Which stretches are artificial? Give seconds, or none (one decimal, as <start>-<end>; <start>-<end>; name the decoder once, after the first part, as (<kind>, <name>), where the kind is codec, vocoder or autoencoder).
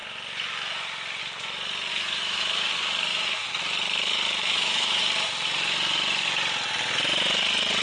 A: 1.9-2.7 (autoencoder, DAC-VAE); 3.1-3.6; 4.4-5.0